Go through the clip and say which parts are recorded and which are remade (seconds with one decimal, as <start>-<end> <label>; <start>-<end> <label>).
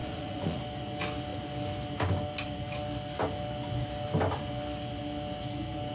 0.0-0.6 remade; 0.6-5.9 recorded